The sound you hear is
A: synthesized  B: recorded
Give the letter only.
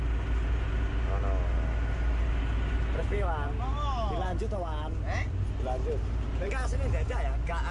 B